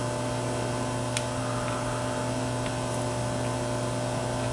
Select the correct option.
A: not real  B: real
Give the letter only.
B